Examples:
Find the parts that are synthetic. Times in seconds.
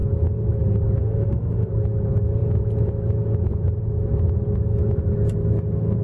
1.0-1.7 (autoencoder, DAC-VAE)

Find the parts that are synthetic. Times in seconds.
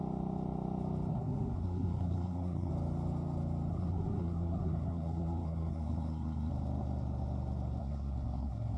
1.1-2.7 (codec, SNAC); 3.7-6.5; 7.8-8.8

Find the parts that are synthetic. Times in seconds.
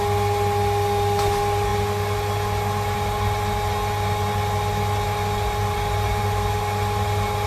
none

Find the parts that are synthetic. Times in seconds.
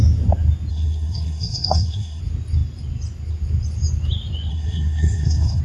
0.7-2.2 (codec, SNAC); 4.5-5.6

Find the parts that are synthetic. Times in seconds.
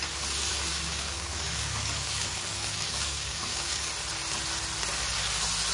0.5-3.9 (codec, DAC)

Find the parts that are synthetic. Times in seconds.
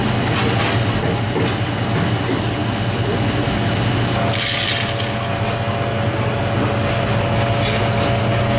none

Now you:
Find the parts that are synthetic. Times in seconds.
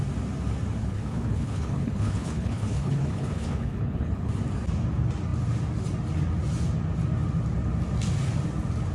0.8-4.3 (codec, HILCodec)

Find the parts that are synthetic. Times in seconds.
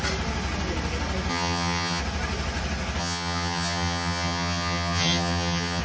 1.3-2.0 (vocoder, HiFi-GAN); 3.0-5.8